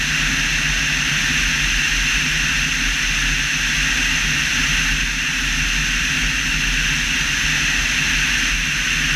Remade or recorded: recorded